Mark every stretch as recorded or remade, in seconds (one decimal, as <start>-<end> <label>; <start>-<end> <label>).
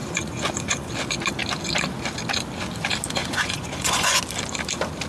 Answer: 0.0-0.9 remade; 0.9-3.2 recorded; 3.2-4.2 remade; 4.2-5.1 recorded